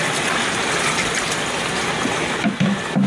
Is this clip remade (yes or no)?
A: no